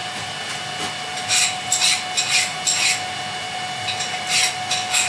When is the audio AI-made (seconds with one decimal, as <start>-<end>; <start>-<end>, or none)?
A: none